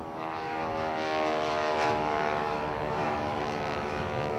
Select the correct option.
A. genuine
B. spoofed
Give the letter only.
B